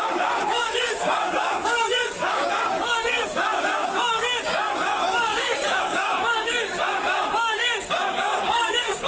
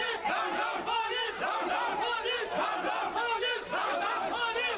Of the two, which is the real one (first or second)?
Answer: second